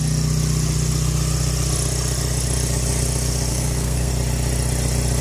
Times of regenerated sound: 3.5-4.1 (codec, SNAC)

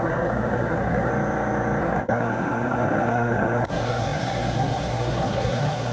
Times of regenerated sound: 0.0-1.1 (codec, SNAC); 1.8-5.9

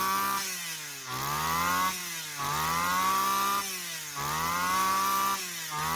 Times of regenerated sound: none

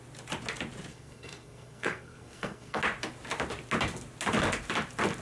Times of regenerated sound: 0.9-2.8 (codec, SNAC)

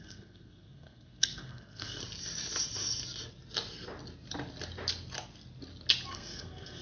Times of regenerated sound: 0.0-2.0 (codec, SNAC); 6.1-6.8

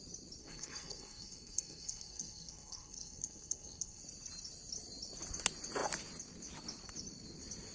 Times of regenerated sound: 0.4-4.0 (codec, SNAC)

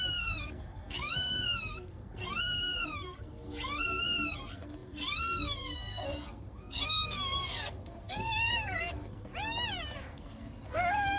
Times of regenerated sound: 0.0-9.3 (codec, SNAC); 10.0-11.2